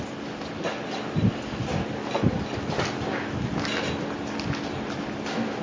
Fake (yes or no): no